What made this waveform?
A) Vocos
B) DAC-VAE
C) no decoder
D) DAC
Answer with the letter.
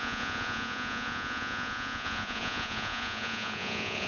A